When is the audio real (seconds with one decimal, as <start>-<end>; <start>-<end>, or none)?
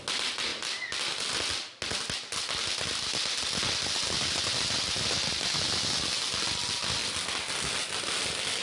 0.0-8.6